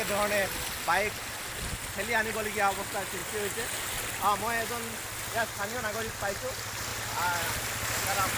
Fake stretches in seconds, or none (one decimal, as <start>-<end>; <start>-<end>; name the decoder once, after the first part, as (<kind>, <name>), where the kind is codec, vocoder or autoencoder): none